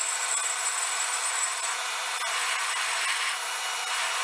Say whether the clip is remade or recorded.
recorded